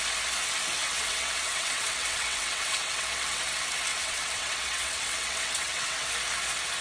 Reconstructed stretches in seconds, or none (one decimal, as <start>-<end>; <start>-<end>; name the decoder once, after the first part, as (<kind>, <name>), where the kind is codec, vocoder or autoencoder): 0.9-3.4 (vocoder, WaveNeXt); 3.9-6.1